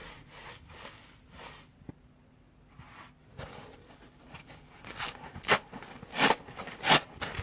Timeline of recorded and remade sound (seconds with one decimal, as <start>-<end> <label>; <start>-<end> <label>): 0.0-0.5 remade; 0.5-7.4 recorded